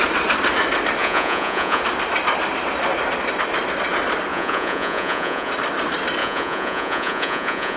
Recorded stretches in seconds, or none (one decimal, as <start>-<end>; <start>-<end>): 0.0-1.0; 1.8-4.3; 5.5-6.2